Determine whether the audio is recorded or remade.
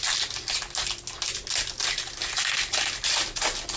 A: recorded